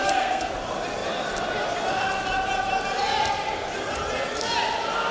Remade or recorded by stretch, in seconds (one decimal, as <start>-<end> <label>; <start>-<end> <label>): 0.0-0.5 remade; 0.5-5.1 recorded